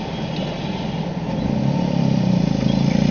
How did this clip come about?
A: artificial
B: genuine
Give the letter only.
B